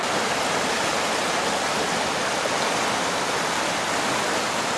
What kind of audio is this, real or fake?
real